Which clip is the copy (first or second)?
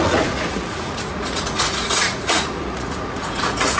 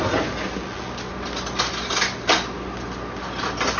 first